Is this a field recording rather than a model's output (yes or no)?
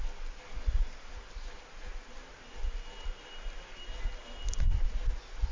yes